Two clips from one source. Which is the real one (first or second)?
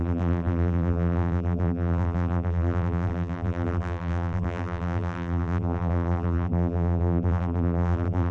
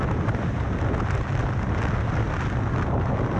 second